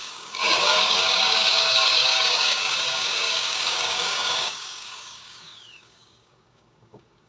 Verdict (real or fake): fake